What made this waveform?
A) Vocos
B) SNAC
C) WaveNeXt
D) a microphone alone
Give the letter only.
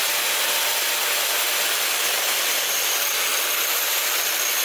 D